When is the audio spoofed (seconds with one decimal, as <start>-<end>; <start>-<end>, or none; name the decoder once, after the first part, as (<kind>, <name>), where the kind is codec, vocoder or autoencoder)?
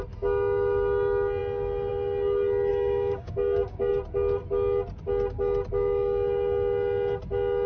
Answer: 2.7-3.9 (codec, DAC)